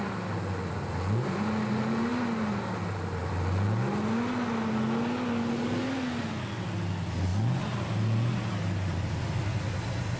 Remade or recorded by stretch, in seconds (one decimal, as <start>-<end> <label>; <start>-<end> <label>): 0.0-10.2 recorded